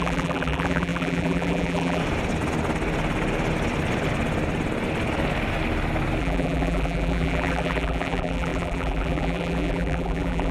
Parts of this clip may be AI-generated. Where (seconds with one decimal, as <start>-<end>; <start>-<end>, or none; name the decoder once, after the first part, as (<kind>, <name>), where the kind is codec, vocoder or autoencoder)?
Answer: 0.0-2.0 (vocoder, BigVGAN v2); 6.2-10.5